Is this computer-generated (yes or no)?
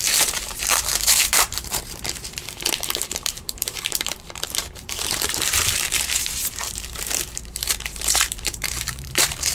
yes